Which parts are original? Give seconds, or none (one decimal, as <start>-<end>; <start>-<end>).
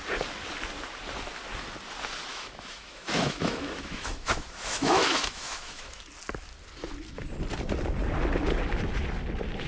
0.0-2.3; 6.0-9.7